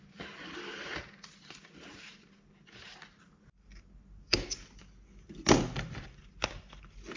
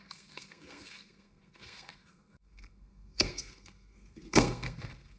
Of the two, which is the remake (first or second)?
second